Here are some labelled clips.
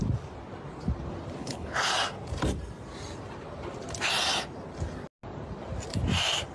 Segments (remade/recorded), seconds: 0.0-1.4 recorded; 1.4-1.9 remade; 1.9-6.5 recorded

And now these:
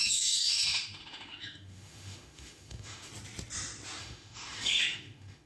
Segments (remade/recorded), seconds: 0.0-3.1 remade; 3.1-4.0 recorded; 4.0-5.5 remade

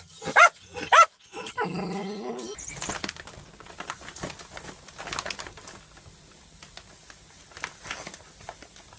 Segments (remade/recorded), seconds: 0.0-9.0 recorded

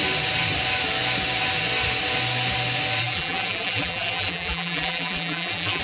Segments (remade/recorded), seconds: 0.0-3.0 recorded; 3.0-5.8 remade

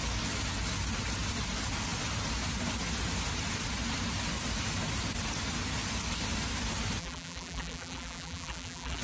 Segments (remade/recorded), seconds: 0.0-7.0 recorded; 7.0-9.0 remade

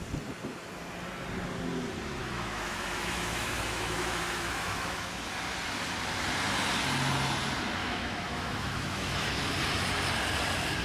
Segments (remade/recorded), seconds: 0.0-2.2 recorded; 2.2-5.3 remade; 5.3-7.8 recorded; 7.8-9.4 remade; 9.4-10.8 recorded